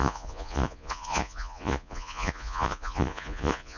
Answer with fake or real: fake